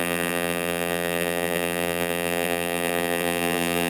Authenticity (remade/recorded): remade